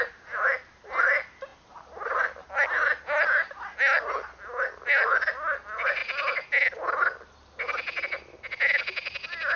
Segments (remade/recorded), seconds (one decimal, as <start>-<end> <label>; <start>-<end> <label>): 0.0-9.6 recorded